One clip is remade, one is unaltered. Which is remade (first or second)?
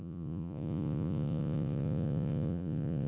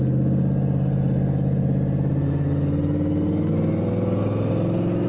first